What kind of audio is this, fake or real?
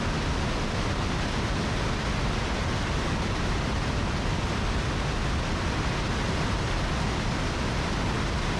real